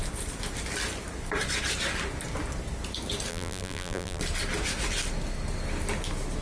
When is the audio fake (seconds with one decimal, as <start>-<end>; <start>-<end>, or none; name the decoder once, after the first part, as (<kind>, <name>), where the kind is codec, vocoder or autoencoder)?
3.3-4.2 (vocoder, BigVGAN v2)

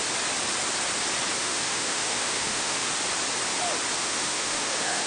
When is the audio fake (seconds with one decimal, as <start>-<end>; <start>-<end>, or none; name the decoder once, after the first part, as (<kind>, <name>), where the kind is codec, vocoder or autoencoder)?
1.4-2.9 (autoencoder, DAC-VAE); 4.0-5.1

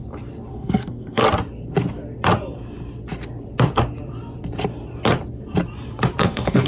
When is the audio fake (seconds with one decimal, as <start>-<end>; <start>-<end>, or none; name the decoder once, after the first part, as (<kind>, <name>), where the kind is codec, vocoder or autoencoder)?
0.5-1.2 (codec, SNAC); 6.2-6.7

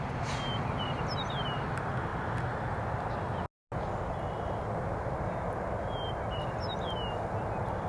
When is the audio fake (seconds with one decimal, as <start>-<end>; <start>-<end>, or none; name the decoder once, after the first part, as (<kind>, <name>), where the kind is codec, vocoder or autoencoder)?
none

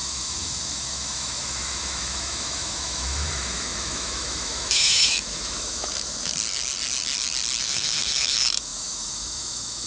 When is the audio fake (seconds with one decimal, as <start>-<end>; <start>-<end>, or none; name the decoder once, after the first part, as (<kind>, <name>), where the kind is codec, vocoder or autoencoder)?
0.0-6.3 (autoencoder, DAC-VAE); 7.6-9.9

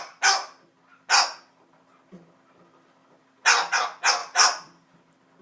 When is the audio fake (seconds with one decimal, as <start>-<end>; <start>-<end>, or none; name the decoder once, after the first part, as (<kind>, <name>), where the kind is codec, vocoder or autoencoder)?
4.2-4.9 (vocoder, BigVGAN v2)